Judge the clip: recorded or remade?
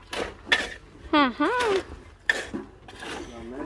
recorded